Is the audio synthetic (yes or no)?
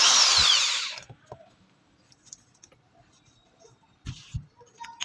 no